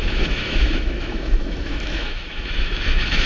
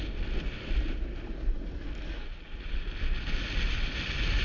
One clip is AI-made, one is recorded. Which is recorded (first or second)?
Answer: second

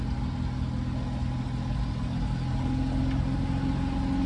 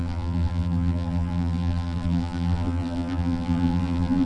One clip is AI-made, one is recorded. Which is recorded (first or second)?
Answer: first